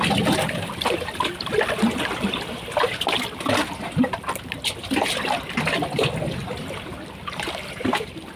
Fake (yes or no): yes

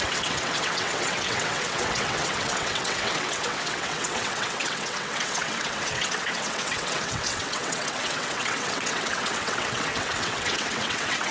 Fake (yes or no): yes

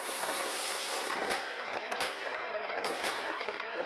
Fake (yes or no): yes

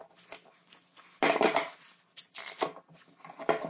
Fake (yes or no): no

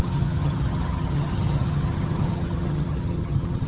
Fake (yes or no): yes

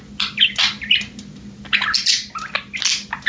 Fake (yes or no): no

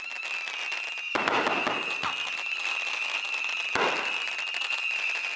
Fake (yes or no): no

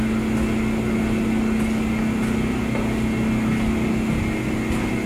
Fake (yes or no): no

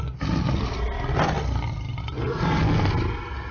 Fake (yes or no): no